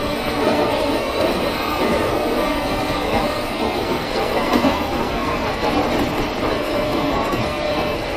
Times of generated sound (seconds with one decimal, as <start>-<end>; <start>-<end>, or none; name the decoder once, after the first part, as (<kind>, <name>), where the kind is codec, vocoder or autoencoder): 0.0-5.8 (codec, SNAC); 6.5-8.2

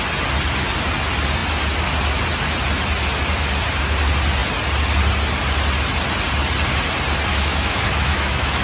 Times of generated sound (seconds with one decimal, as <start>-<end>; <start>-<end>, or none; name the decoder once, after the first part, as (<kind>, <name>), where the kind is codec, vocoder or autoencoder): 7.3-8.6 (autoencoder, DAC-VAE)

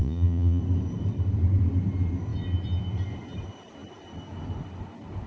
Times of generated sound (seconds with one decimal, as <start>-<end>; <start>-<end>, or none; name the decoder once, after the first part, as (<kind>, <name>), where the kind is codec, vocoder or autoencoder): 0.0-0.6 (vocoder, Vocos)

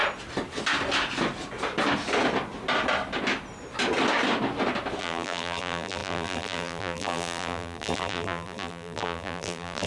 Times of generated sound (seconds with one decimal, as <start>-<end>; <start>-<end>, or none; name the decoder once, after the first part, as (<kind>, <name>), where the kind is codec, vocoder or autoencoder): 5.0-9.9 (vocoder, BigVGAN v2)

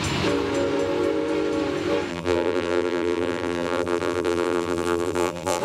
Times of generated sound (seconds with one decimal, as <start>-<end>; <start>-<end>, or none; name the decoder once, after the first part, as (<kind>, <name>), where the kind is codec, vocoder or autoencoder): 2.1-5.6 (vocoder, BigVGAN v2)

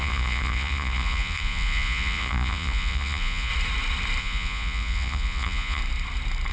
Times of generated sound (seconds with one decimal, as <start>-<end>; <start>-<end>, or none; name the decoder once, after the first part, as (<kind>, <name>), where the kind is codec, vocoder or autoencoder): 0.0-3.5 (vocoder, Vocos); 4.2-5.8

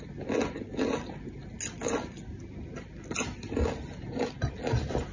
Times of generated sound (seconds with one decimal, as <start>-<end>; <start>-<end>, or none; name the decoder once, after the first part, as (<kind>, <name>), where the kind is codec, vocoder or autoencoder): none